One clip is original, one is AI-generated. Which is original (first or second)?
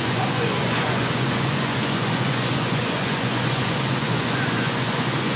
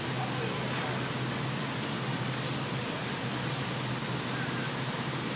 second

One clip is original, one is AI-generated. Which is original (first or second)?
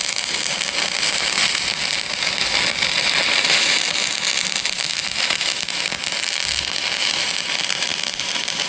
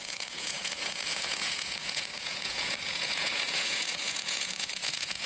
first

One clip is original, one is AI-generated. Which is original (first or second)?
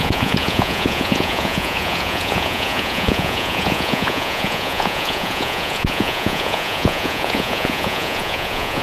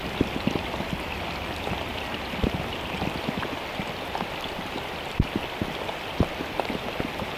second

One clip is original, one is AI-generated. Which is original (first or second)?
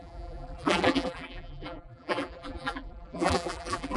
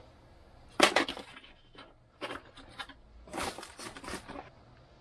second